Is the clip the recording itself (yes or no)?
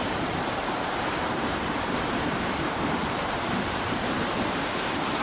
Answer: no